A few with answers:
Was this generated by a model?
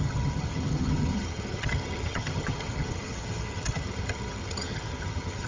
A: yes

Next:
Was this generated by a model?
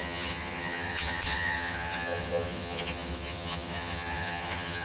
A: yes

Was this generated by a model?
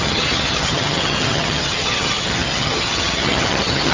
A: yes